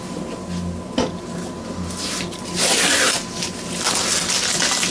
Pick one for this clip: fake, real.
real